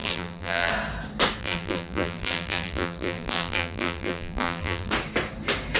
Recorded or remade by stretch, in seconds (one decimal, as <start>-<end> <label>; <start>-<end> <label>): 0.0-0.7 remade; 0.7-1.4 recorded; 1.4-4.9 remade; 4.9-5.8 recorded